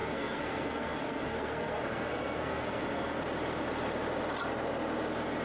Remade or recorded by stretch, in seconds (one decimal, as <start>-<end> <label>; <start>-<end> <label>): 0.0-3.2 remade; 3.2-5.4 recorded

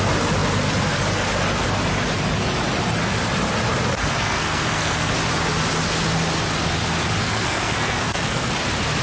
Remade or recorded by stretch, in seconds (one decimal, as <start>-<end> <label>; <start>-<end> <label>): 0.0-4.0 recorded; 4.0-5.1 remade; 5.1-7.2 recorded; 7.2-8.5 remade; 8.5-9.0 recorded

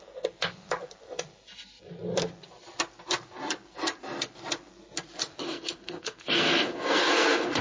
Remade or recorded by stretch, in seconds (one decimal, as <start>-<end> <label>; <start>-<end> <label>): 0.0-5.4 recorded; 5.4-7.6 remade

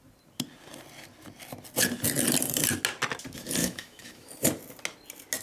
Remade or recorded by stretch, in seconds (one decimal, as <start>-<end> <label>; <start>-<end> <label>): 0.0-3.6 recorded; 3.6-4.3 remade; 4.3-5.4 recorded

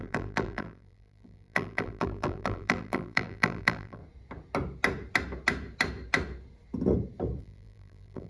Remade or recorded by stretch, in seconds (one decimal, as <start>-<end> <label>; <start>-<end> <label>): 0.0-4.0 remade; 4.0-7.4 recorded; 7.4-8.3 remade

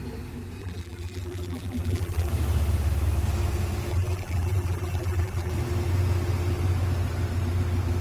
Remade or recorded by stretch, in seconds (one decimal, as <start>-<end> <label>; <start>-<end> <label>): 0.0-0.6 recorded; 0.6-2.3 remade; 2.3-3.9 recorded; 3.9-5.5 remade; 5.5-8.0 recorded

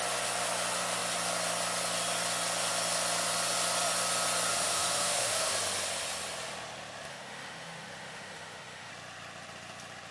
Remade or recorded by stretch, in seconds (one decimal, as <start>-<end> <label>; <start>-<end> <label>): 0.0-4.5 recorded; 4.5-5.5 remade; 5.5-7.1 recorded; 7.1-8.9 remade; 8.9-10.1 recorded

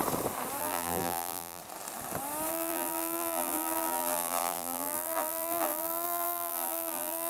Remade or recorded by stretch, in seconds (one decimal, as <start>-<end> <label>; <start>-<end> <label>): 0.0-0.6 recorded; 0.6-1.6 remade; 1.6-2.5 recorded; 2.5-7.3 remade